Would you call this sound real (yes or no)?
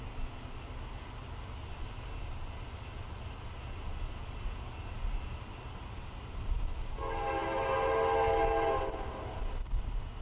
yes